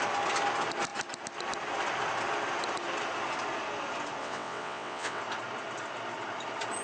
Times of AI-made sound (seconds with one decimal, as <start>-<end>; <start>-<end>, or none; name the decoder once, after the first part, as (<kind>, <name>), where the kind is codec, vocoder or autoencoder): 4.2-5.2 (vocoder, WaveNeXt)